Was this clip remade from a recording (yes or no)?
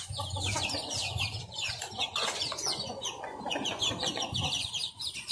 yes